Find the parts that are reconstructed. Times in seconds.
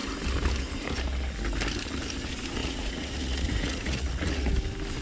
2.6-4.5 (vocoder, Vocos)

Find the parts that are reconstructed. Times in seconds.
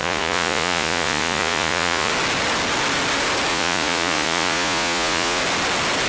0.0-2.1 (vocoder, Vocos); 3.5-5.4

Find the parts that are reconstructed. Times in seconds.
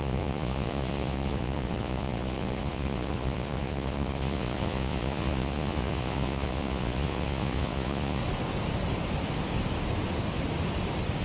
0.0-8.2 (vocoder, Vocos)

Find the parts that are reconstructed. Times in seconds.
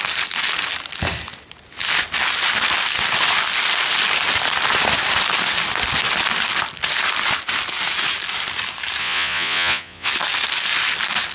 9.0-10.1 (vocoder, Vocos)